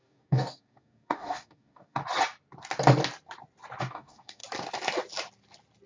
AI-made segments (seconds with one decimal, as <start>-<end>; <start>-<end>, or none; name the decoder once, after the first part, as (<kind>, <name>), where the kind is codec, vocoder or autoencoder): 0.0-2.0 (codec, DAC); 3.8-4.4